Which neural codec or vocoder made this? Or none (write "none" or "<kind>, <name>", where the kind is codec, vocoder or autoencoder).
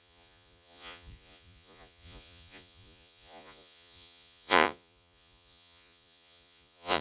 vocoder, Vocos